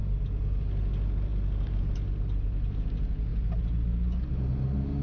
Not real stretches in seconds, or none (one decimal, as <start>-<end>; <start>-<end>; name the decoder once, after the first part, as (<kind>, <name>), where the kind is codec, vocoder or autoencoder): none